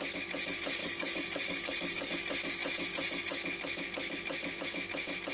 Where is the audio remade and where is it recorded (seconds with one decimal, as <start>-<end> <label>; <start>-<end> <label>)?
0.0-0.8 recorded; 0.8-2.1 remade; 2.1-5.3 recorded